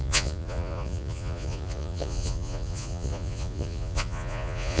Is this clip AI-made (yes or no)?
yes